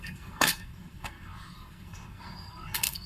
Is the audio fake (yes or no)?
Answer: yes